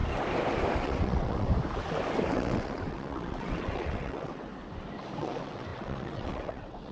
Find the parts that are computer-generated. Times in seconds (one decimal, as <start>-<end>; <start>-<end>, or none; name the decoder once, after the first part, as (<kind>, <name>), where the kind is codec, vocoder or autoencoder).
0.8-1.5 (vocoder, WaveNeXt); 2.3-4.5; 5.2-6.9